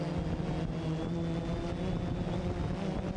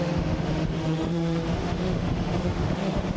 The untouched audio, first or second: first